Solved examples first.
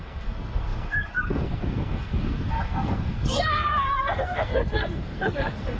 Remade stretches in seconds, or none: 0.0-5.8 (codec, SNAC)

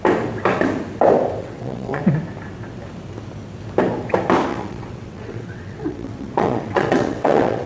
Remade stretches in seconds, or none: 1.4-2.0 (vocoder, WaveNeXt); 4.5-7.7

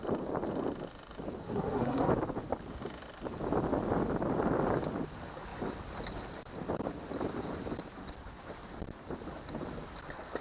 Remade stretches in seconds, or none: 1.4-2.1 (codec, SNAC)

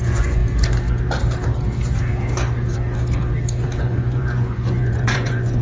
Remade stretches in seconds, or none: 0.0-0.4 (vocoder, Vocos); 3.8-5.6